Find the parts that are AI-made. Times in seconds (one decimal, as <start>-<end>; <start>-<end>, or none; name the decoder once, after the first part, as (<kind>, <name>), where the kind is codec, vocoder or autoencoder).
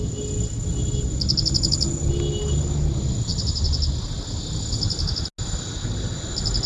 none